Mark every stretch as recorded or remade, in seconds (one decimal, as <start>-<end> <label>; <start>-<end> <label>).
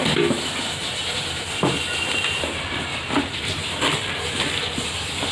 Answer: 0.0-5.3 recorded